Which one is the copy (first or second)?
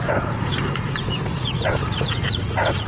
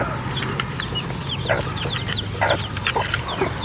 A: first